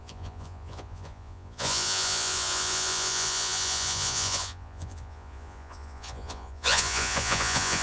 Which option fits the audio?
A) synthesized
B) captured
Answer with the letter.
A